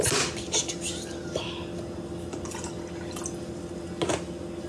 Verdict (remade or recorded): recorded